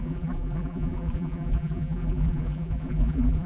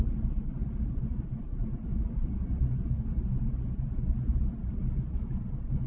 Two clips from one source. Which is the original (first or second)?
second